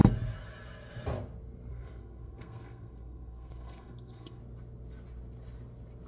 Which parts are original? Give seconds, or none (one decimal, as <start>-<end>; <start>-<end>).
0.0-1.7; 4.4-6.1